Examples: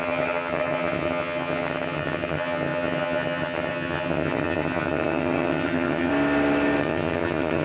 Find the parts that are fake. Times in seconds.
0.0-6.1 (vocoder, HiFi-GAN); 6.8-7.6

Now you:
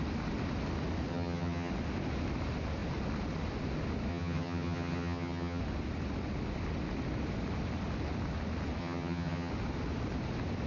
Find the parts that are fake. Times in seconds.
1.1-1.7 (vocoder, HiFi-GAN); 4.1-5.6; 8.8-9.5

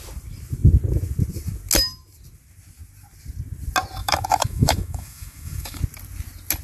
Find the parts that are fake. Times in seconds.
4.0-5.8 (autoencoder, DAC-VAE)

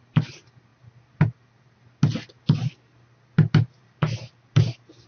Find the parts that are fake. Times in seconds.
none